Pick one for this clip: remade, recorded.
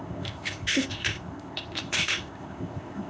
remade